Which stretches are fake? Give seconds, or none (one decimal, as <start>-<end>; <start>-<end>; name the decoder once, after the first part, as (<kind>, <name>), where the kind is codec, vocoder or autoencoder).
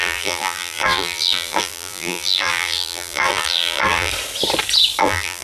0.0-4.1 (vocoder, BigVGAN v2); 5.0-5.4